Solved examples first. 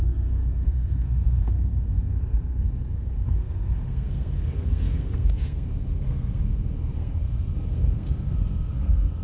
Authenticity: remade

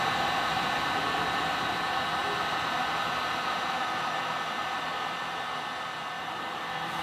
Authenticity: remade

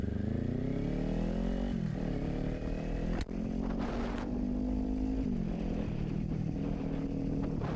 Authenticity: recorded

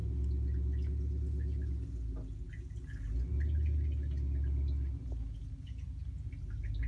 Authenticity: recorded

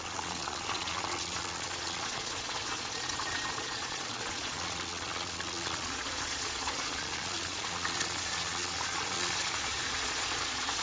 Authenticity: remade